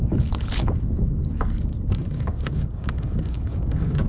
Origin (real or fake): fake